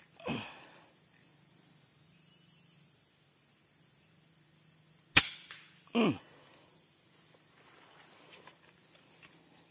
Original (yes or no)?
yes